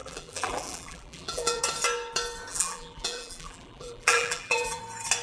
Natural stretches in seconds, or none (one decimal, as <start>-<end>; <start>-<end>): 1.6-2.5; 4.8-5.2